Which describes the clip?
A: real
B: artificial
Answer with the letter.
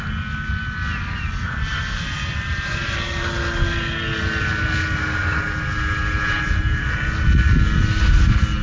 A